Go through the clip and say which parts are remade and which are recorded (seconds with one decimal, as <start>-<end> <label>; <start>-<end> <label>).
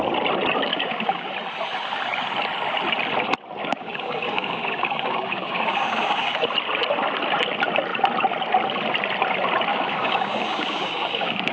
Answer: 0.0-0.7 recorded; 0.7-1.3 remade; 1.3-3.6 recorded; 3.6-6.4 remade; 6.4-9.7 recorded; 9.7-11.5 remade